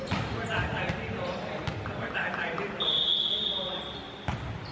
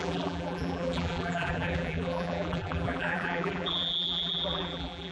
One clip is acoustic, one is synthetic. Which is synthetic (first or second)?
second